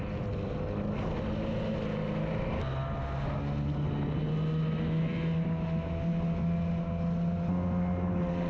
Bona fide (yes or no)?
yes